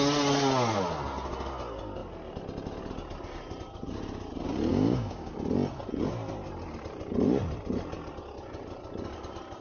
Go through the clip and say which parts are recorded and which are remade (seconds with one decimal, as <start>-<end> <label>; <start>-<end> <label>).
0.0-4.7 recorded; 4.7-5.3 remade; 5.3-9.6 recorded